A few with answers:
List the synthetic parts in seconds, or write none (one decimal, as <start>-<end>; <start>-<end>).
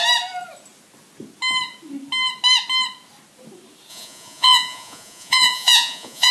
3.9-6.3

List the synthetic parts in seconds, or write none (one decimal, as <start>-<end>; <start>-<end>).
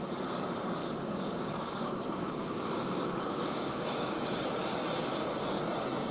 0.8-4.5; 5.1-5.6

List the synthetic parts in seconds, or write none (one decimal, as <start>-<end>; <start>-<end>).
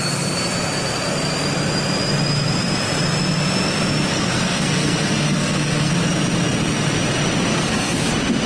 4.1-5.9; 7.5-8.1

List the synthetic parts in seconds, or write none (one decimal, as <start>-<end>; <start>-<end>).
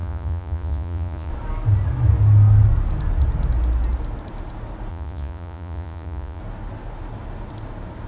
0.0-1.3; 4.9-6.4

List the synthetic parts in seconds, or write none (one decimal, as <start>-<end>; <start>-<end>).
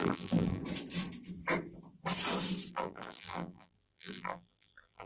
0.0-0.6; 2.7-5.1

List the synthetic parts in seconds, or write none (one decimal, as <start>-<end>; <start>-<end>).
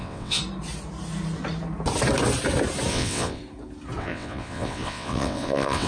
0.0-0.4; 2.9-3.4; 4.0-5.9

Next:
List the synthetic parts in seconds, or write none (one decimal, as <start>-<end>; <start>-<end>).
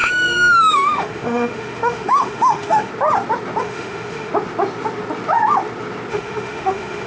0.0-2.9; 3.6-4.3; 6.1-7.1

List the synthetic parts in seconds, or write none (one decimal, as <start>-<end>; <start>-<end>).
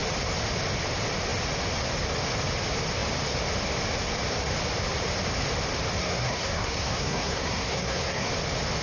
6.0-8.3